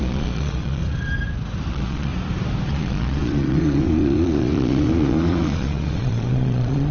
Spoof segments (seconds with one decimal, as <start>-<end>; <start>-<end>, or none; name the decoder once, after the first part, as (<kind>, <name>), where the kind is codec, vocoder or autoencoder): 0.0-0.8 (vocoder, Vocos); 1.7-2.1; 2.7-6.9